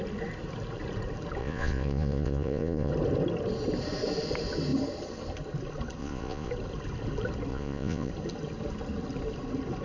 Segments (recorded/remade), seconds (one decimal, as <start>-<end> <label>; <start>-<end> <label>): 0.0-1.4 recorded; 1.4-2.9 remade; 2.9-6.0 recorded; 6.0-6.5 remade; 6.5-7.5 recorded; 7.5-8.1 remade; 8.1-9.8 recorded